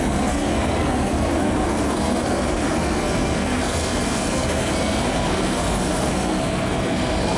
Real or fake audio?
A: fake